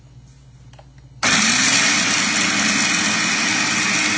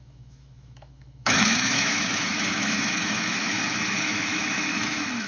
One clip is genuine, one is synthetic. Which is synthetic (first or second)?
second